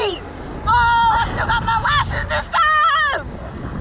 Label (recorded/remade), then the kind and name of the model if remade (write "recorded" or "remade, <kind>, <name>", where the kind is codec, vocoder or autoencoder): recorded